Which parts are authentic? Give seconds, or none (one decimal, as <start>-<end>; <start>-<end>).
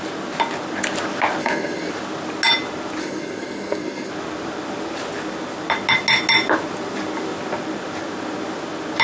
0.0-1.4; 1.9-3.0; 4.1-9.0